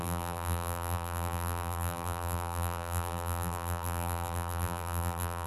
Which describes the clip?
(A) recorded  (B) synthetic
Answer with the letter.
B